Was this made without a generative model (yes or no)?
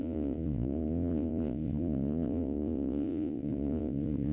no